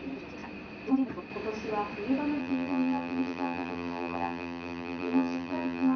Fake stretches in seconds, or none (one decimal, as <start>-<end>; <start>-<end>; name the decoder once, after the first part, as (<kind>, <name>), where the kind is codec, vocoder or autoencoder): 2.4-6.0 (vocoder, BigVGAN v2)